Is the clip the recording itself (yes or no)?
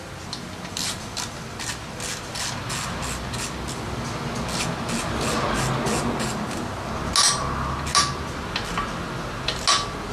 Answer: yes